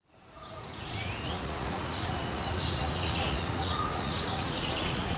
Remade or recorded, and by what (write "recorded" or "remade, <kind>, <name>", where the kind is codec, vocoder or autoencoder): remade, vocoder, Vocos